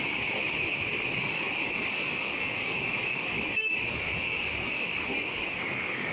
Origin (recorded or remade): remade